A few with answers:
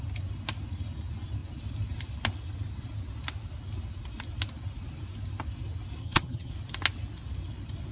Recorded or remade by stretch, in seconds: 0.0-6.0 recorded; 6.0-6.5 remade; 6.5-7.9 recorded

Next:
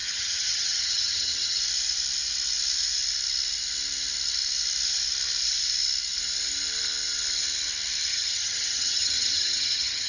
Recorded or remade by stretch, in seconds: 0.0-1.6 remade; 1.6-8.1 recorded; 8.1-10.1 remade

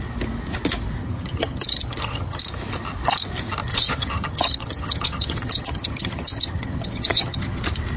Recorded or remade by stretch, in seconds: 0.0-1.0 recorded; 1.0-2.4 remade; 2.4-3.7 recorded; 3.7-7.6 remade; 7.6-8.0 recorded

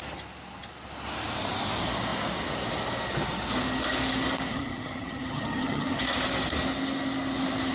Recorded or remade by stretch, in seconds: 0.0-4.5 recorded; 4.5-6.0 remade; 6.0-7.7 recorded

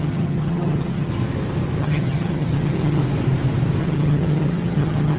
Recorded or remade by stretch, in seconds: 0.0-1.1 remade; 1.1-1.8 recorded; 1.8-3.0 remade; 3.0-3.8 recorded; 3.8-5.2 remade